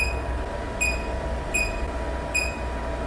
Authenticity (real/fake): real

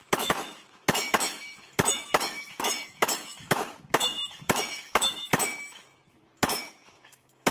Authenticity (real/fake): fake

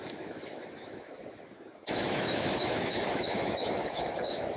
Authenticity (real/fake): fake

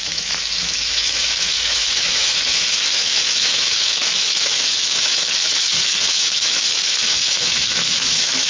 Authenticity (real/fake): fake